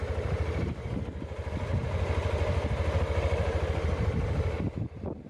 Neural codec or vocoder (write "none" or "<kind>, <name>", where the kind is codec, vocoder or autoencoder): none